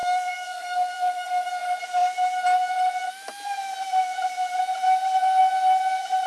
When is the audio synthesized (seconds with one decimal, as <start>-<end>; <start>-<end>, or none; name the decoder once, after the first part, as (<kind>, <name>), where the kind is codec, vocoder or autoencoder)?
0.0-1.5 (codec, SNAC)